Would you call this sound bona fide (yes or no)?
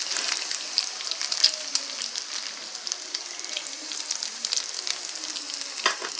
yes